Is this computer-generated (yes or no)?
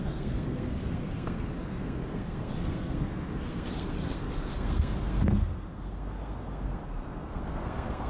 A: yes